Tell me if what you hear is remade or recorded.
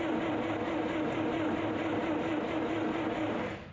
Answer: recorded